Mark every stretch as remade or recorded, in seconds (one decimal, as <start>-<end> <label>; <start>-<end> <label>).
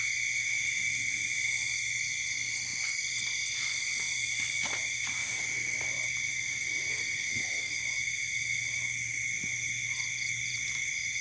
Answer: 0.0-6.9 recorded; 6.9-7.7 remade; 7.7-11.2 recorded